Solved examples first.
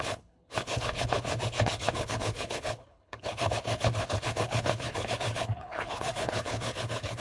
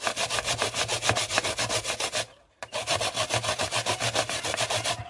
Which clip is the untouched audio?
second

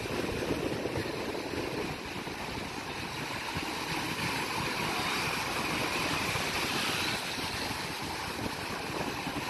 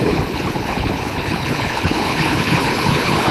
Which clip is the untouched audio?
first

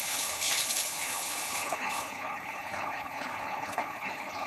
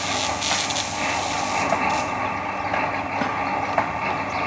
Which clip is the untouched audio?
second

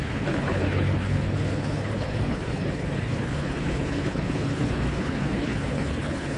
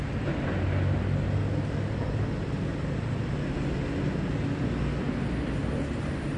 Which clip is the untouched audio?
second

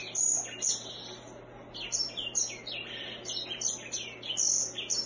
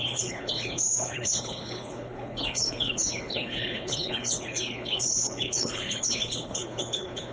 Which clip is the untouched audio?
first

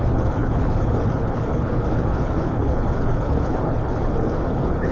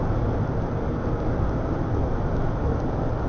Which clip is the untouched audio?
second